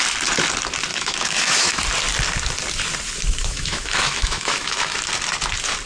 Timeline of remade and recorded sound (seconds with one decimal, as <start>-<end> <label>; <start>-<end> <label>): 0.0-0.9 recorded; 0.9-1.8 remade; 1.8-3.4 recorded; 3.4-5.0 remade; 5.0-5.9 recorded